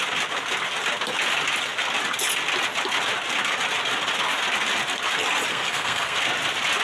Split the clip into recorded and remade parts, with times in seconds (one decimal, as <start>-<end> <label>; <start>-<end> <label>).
0.0-5.5 recorded; 5.5-6.2 remade; 6.2-6.8 recorded